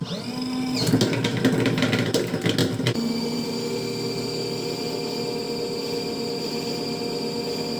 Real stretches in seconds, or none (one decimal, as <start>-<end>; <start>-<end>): 0.0-2.6; 3.5-7.8